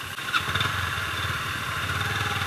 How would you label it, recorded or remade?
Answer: recorded